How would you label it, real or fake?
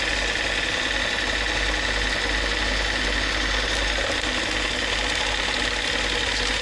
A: real